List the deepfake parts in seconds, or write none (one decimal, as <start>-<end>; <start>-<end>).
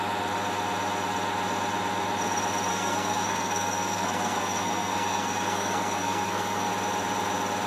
2.7-6.7